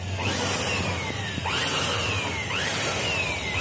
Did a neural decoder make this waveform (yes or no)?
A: no